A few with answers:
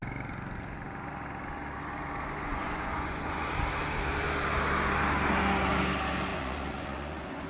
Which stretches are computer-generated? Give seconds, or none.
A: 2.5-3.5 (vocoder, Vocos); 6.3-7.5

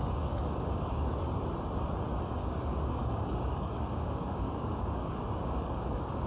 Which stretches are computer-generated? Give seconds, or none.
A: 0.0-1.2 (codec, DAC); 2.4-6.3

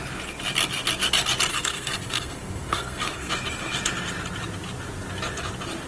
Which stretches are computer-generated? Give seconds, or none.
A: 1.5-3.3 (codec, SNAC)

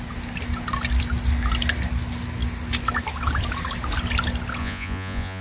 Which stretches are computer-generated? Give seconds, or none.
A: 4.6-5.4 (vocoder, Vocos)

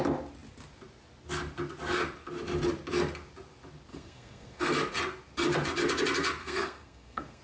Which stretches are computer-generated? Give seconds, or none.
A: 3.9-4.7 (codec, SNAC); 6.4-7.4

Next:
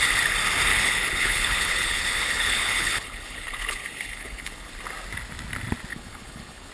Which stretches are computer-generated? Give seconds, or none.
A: 0.7-4.7 (codec, HILCodec); 5.9-6.7

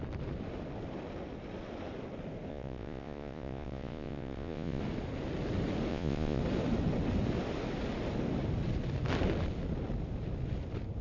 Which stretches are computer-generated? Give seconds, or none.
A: 2.5-4.8 (vocoder, Vocos); 5.9-6.4